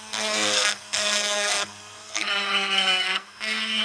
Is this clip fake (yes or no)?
yes